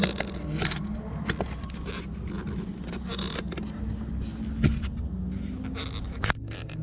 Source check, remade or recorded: recorded